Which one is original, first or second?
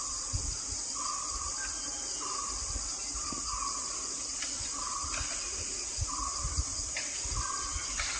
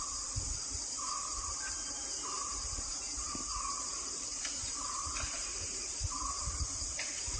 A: first